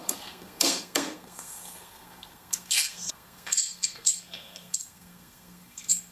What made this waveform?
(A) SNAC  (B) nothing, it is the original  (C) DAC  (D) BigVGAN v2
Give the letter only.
A